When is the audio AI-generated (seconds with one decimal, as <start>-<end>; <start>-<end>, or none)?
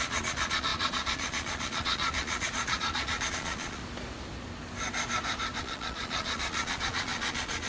0.0-3.8; 5.6-7.7